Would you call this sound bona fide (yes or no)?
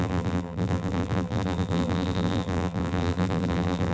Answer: no